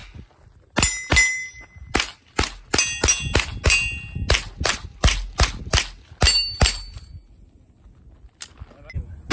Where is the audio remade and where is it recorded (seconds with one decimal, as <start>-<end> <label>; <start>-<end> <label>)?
0.0-9.3 recorded